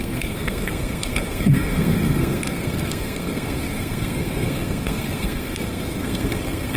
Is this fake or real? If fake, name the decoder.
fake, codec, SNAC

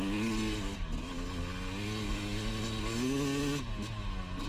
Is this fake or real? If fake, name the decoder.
real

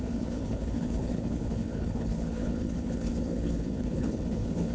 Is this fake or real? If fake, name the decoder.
fake, codec, HILCodec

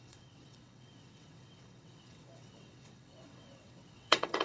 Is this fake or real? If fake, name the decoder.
fake, vocoder, WaveNeXt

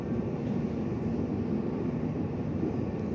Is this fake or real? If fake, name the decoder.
real